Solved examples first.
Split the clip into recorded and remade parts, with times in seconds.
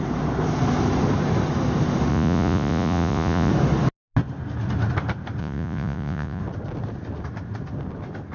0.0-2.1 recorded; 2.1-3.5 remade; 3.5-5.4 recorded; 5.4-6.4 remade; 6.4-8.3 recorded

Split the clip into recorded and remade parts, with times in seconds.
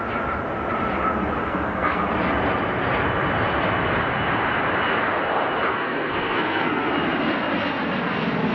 0.0-1.4 recorded; 1.4-2.1 remade; 2.1-5.7 recorded; 5.7-6.9 remade; 6.9-8.5 recorded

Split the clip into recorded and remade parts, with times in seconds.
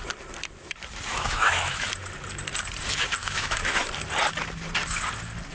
0.0-1.1 recorded; 1.1-1.9 remade; 1.9-3.2 recorded; 3.2-3.9 remade; 3.9-5.5 recorded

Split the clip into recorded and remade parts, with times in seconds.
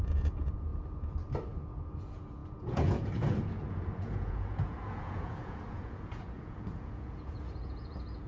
0.0-0.7 remade; 0.7-2.0 recorded; 2.0-8.3 remade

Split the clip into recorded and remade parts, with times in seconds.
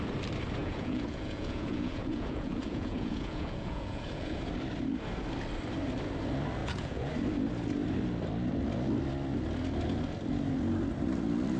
0.0-0.6 recorded; 0.6-4.4 remade; 4.4-6.6 recorded; 6.6-7.1 remade; 7.1-11.6 recorded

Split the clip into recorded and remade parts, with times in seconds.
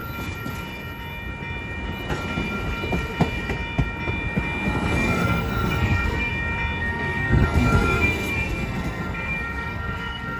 0.0-4.9 recorded; 4.9-6.3 remade; 6.3-6.8 recorded; 6.8-10.4 remade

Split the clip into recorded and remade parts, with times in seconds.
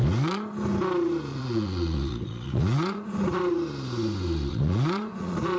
0.0-1.3 recorded; 1.3-3.5 remade; 3.5-4.5 recorded; 4.5-5.6 remade